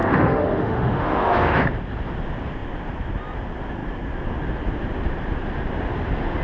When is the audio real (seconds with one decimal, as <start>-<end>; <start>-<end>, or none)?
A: 1.6-6.4